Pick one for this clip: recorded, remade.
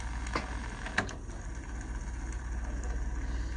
recorded